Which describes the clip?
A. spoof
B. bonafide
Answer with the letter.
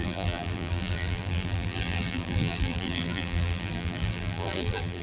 A